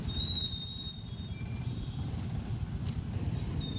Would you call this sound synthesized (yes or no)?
no